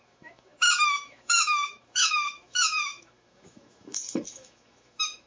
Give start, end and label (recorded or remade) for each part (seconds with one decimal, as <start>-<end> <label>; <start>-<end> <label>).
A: 0.0-5.3 remade